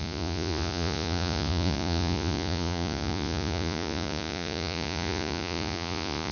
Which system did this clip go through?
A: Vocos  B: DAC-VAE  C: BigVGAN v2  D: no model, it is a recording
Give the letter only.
A